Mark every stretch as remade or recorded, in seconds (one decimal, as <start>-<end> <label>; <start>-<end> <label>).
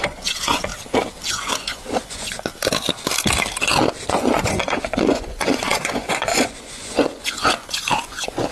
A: 0.0-0.7 remade; 0.7-1.3 recorded; 1.3-2.5 remade; 2.5-4.1 recorded; 4.1-8.5 remade